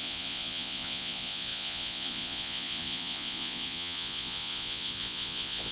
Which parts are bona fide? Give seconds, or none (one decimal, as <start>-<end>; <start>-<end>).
none